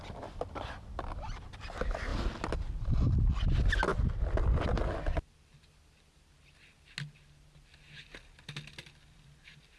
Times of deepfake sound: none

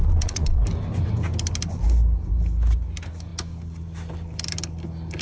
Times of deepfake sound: 0.0-0.6 (vocoder, Vocos)

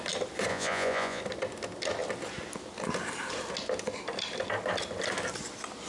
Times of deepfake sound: 0.5-1.2 (vocoder, Vocos)

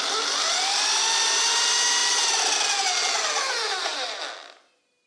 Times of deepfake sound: none